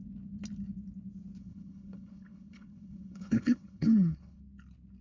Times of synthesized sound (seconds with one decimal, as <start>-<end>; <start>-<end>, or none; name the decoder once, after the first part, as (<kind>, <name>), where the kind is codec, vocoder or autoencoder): 1.4-4.4 (codec, HILCodec)

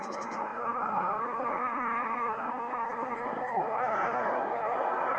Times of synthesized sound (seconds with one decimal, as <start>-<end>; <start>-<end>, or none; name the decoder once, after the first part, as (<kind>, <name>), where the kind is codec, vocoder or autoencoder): 0.0-5.2 (codec, SNAC)

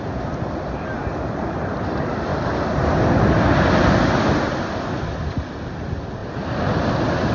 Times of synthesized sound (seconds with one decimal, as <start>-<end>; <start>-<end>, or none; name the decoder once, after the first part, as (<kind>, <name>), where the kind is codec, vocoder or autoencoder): none

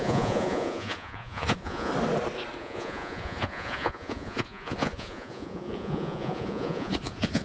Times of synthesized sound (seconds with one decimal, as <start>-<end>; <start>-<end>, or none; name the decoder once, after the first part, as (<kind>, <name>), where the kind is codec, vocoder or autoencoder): 0.0-1.9 (vocoder, Vocos); 2.6-7.4

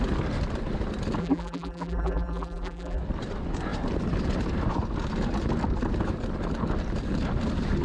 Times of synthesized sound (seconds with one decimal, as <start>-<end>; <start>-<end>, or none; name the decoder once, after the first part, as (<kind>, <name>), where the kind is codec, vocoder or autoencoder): 1.2-3.0 (vocoder, BigVGAN v2)

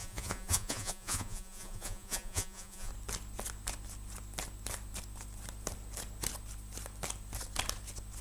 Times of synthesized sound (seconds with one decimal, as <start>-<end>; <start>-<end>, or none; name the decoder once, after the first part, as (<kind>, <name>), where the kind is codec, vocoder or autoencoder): 0.0-2.9 (vocoder, Vocos)

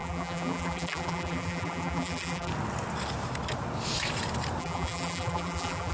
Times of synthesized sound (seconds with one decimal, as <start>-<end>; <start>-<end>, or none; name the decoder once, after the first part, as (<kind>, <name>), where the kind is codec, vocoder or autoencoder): 0.0-2.5 (vocoder, BigVGAN v2); 4.6-5.9